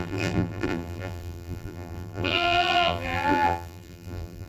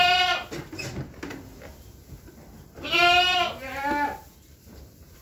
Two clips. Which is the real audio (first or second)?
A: second